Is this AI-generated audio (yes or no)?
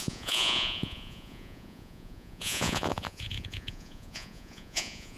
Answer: yes